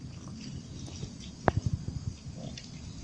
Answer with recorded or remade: recorded